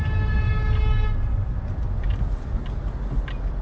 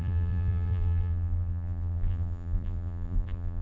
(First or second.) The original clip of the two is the first